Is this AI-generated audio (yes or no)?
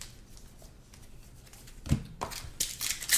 no